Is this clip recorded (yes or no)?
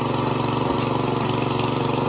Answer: yes